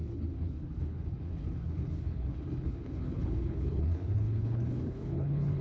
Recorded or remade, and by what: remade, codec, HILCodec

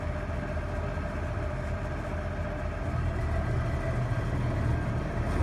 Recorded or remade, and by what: recorded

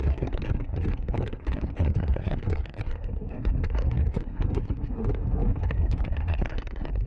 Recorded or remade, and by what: remade, codec, SNAC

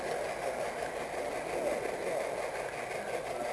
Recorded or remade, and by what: recorded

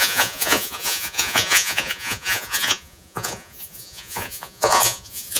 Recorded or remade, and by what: remade, vocoder, Vocos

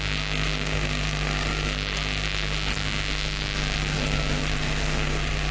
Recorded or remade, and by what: remade, codec, SNAC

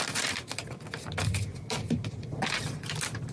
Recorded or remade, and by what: recorded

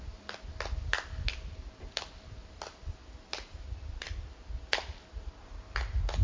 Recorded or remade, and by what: recorded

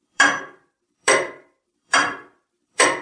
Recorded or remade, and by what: remade, vocoder, BigVGAN v2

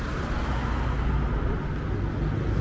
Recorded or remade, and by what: recorded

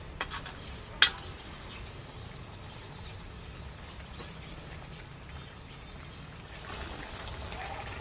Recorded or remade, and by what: recorded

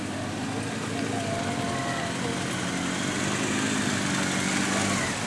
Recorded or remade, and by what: recorded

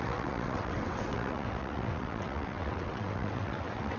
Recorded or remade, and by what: remade, vocoder, WaveNeXt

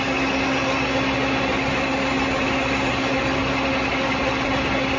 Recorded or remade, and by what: recorded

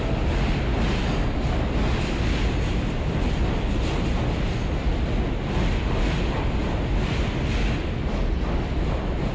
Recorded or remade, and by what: recorded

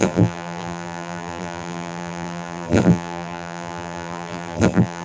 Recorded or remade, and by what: remade, vocoder, BigVGAN v2